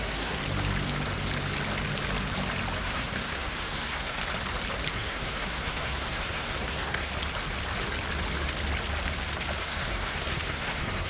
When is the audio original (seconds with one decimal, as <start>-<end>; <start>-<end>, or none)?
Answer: 0.4-2.8; 4.2-4.9; 7.1-9.6